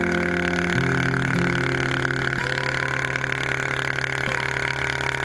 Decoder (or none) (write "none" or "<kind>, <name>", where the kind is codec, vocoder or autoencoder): none